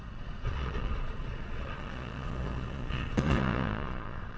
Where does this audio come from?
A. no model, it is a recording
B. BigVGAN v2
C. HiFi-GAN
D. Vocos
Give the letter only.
D